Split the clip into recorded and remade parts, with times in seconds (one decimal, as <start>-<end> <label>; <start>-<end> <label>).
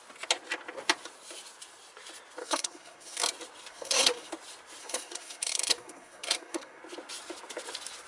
0.0-2.4 recorded; 2.4-3.2 remade; 3.2-3.7 recorded; 3.7-4.3 remade; 4.3-4.8 recorded; 4.8-6.8 remade; 6.8-8.1 recorded